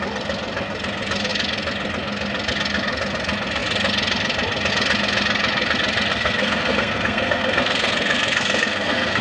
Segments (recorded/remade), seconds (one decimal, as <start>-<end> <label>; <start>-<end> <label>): 0.0-6.1 recorded; 6.1-9.2 remade